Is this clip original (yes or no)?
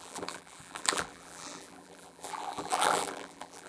no